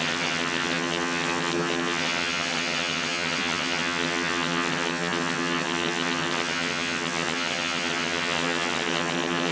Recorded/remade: remade